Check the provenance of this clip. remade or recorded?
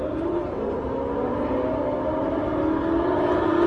recorded